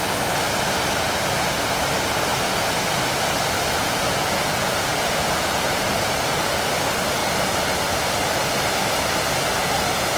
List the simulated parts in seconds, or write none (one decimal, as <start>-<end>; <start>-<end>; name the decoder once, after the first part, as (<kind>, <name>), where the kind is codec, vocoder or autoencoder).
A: 3.8-6.5 (vocoder, Vocos); 9.6-10.2